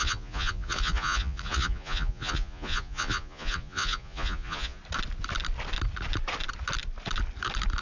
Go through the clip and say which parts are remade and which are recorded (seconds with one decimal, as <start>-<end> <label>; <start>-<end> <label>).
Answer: 0.0-4.8 remade; 4.8-7.8 recorded

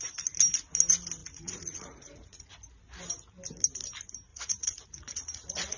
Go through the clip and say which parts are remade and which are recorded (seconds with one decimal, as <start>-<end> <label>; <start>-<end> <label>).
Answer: 0.0-1.2 recorded; 1.2-2.5 remade; 2.5-4.3 recorded; 4.3-5.8 remade

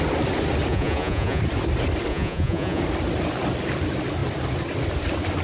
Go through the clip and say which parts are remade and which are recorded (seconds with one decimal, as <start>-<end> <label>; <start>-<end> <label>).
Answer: 0.0-0.7 recorded; 0.7-1.4 remade; 1.4-2.1 recorded; 2.1-2.8 remade; 2.8-5.4 recorded

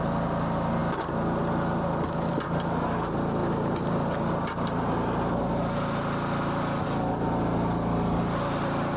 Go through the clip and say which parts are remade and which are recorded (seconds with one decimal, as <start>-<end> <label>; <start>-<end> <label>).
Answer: 0.0-9.0 recorded

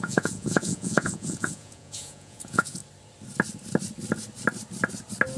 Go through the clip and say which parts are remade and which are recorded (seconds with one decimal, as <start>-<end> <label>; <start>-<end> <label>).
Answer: 0.0-2.8 remade; 2.8-5.4 recorded

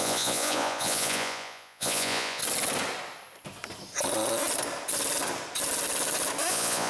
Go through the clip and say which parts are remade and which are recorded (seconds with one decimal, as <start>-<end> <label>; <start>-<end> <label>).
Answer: 0.0-2.4 remade; 2.4-6.5 recorded; 6.5-6.9 remade

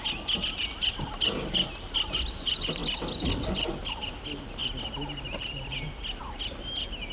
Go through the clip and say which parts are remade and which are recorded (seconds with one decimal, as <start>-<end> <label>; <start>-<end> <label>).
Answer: 0.0-7.1 recorded